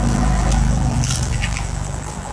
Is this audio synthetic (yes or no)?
yes